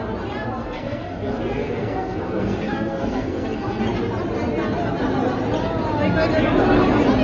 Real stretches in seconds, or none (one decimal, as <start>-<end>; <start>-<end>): 0.0-0.6; 3.8-7.2